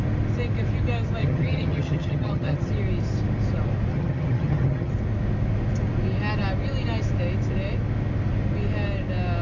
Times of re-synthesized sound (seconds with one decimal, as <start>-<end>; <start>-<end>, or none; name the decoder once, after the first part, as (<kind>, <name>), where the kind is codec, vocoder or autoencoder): 1.2-2.7 (vocoder, HiFi-GAN); 3.9-4.9